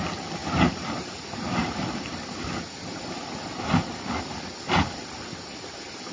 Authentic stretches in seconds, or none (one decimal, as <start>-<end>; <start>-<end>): 0.0-0.4; 1.9-5.3

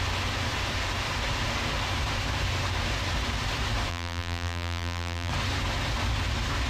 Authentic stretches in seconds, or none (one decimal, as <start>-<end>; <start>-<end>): 0.0-3.9; 5.3-6.7

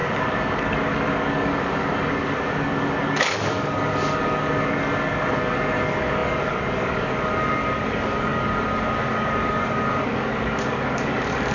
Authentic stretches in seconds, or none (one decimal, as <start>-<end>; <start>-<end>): none

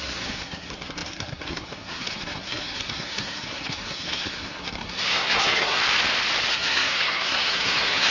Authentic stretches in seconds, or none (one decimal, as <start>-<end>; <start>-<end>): 5.8-6.5

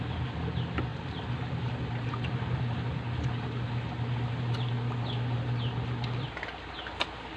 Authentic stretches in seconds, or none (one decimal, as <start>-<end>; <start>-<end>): 0.0-7.4